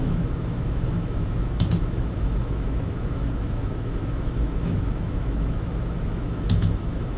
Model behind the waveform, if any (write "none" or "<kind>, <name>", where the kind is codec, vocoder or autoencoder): autoencoder, DAC-VAE